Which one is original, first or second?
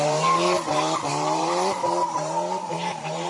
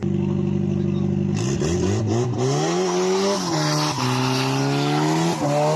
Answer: second